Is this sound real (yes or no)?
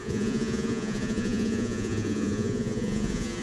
no